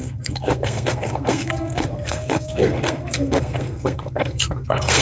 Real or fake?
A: fake